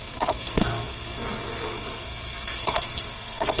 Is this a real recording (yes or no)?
no